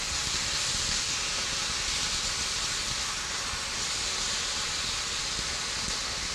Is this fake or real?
real